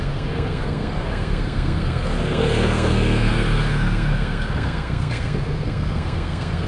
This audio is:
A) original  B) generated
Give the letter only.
B